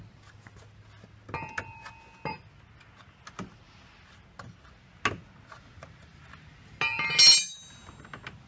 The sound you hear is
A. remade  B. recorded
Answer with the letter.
B